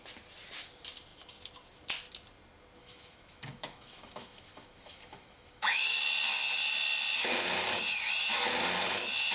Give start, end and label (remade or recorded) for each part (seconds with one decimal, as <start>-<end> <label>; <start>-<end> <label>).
0.0-2.8 recorded; 2.8-6.0 remade; 6.0-9.3 recorded